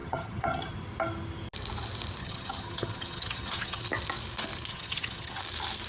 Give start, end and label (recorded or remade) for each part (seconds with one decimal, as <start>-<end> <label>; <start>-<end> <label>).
0.0-0.7 remade; 0.7-2.2 recorded; 2.2-3.8 remade; 3.8-4.7 recorded; 4.7-5.4 remade; 5.4-5.9 recorded